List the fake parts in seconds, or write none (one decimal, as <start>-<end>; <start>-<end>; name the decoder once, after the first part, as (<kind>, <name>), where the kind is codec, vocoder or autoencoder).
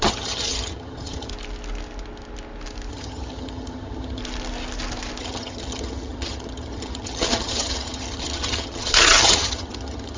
0.0-1.3 (vocoder, HiFi-GAN); 2.9-4.2; 5.2-10.2